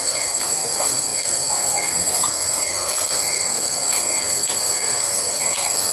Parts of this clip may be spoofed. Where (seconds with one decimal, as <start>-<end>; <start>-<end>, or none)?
0.0-5.9